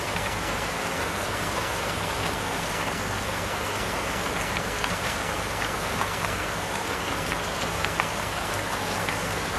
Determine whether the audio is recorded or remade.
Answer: remade